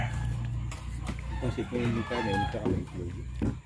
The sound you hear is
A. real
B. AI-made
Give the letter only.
A